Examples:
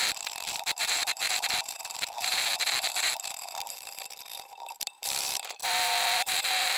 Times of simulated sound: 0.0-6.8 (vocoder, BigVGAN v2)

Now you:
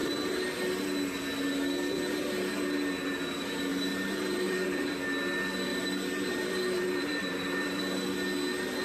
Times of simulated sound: 3.7-4.9 (vocoder, BigVGAN v2); 5.7-7.8

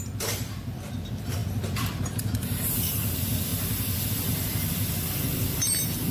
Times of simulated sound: 0.0-1.4 (vocoder, BigVGAN v2); 2.0-6.1

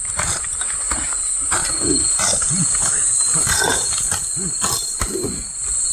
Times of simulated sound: none

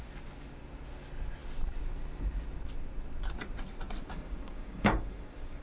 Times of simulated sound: 4.0-5.6 (codec, DAC)